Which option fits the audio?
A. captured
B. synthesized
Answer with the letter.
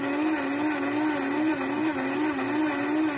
A